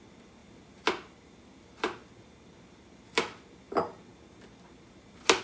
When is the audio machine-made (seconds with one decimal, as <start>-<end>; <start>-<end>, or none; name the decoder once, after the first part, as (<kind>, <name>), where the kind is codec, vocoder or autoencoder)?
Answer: none

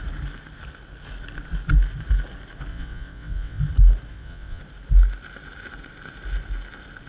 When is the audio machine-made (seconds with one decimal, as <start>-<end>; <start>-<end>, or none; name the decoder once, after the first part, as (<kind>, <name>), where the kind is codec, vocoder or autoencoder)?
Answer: 2.7-3.6 (vocoder, WaveNeXt); 4.1-4.6

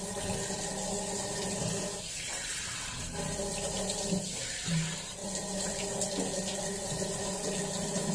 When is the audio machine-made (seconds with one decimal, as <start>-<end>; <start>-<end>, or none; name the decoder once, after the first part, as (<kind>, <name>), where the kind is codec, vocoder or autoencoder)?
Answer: 2.3-3.0 (vocoder, WaveNeXt)